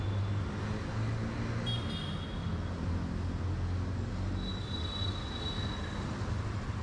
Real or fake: real